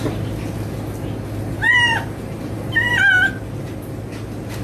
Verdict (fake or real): real